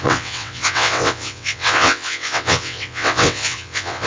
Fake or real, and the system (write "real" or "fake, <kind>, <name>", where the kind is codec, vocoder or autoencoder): fake, vocoder, WaveNeXt